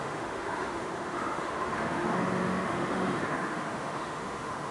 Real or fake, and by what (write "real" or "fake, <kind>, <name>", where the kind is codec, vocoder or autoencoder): fake, autoencoder, DAC-VAE